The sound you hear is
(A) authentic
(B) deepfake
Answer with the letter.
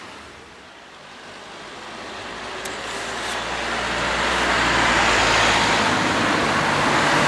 A